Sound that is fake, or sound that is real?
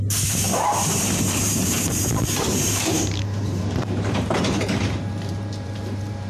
fake